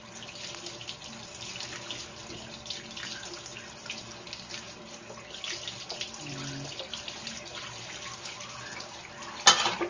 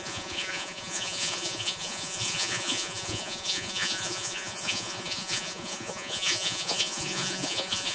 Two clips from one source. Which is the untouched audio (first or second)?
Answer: first